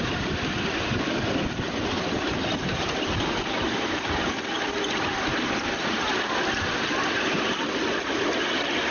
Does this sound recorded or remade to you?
remade